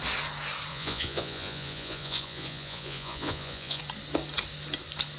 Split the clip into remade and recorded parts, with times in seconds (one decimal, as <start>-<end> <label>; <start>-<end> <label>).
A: 0.0-0.7 recorded; 0.7-3.8 remade; 3.8-5.2 recorded